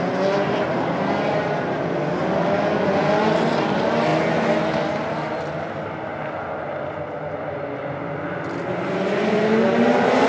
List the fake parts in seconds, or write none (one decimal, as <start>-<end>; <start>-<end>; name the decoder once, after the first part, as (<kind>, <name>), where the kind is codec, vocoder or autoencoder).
none